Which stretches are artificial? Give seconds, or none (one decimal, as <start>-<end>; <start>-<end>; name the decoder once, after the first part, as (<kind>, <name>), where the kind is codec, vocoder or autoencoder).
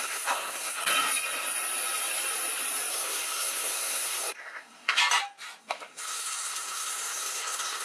0.0-0.9 (codec, SNAC); 2.9-5.0; 5.6-7.8